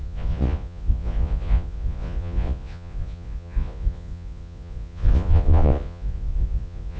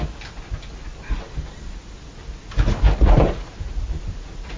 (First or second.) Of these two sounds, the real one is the second